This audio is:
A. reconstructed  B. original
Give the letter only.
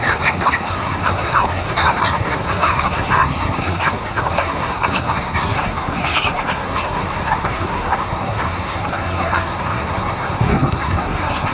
A